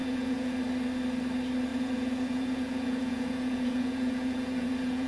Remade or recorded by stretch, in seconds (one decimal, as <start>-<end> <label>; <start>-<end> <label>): 0.0-0.6 remade; 0.6-1.7 recorded; 1.7-5.1 remade

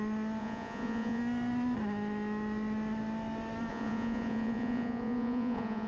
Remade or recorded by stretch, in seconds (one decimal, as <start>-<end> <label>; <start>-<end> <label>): 0.0-0.4 recorded; 0.4-1.2 remade; 1.2-3.7 recorded; 3.7-5.9 remade

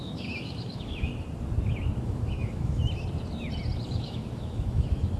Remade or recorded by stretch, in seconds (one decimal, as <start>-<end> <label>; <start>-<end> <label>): 0.0-1.1 remade; 1.1-2.0 recorded; 2.0-2.8 remade; 2.8-3.9 recorded; 3.9-5.2 remade

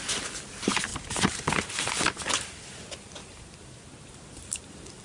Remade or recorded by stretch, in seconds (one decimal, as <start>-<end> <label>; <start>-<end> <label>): 0.0-0.9 recorded; 0.9-2.3 remade; 2.3-3.2 recorded; 3.2-5.0 remade

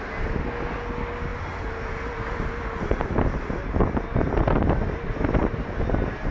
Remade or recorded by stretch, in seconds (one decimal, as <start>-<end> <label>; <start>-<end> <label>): 0.0-6.3 recorded